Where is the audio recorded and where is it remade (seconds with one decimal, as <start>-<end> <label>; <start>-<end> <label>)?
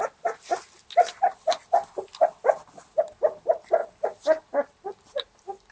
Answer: 0.0-3.8 recorded; 3.8-5.7 remade